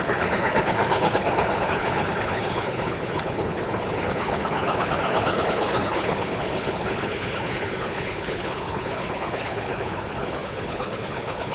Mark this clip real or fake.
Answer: fake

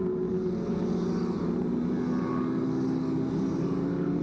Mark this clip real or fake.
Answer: real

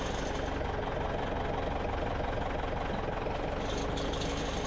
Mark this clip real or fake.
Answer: real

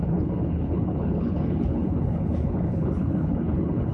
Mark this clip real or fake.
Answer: fake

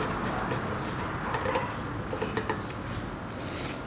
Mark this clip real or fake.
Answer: real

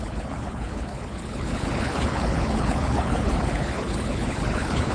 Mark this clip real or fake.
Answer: fake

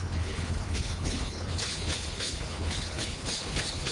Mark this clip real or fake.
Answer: fake